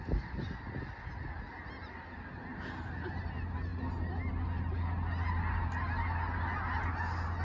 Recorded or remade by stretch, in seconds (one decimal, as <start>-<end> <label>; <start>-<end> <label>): 0.0-7.4 recorded